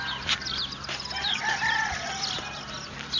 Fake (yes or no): no